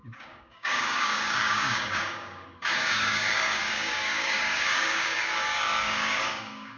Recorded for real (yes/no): no